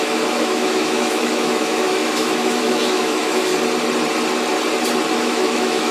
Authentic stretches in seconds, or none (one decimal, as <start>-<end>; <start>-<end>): 3.5-5.1